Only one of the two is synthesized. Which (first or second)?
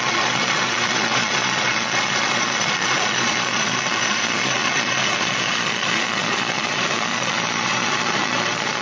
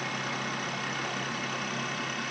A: first